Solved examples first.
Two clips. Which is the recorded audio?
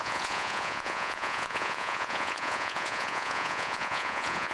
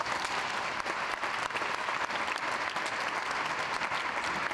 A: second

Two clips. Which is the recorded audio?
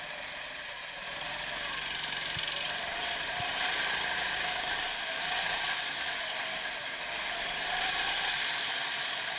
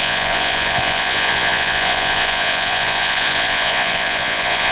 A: first